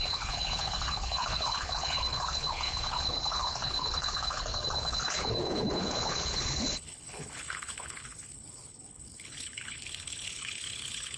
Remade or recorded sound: remade